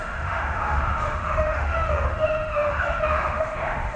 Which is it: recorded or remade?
remade